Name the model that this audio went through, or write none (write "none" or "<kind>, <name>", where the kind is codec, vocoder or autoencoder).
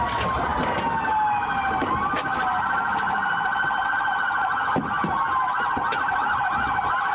none